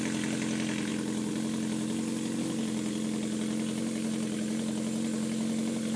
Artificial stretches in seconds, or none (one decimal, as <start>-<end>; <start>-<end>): none